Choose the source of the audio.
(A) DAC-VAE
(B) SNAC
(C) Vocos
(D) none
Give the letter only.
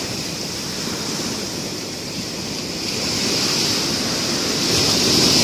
D